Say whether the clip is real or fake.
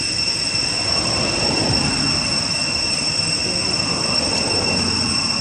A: real